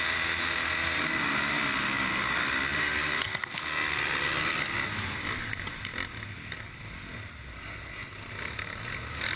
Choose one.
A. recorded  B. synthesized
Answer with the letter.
A